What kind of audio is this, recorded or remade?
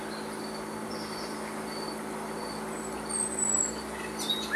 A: recorded